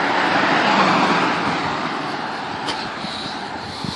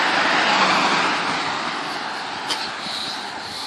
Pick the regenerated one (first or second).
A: first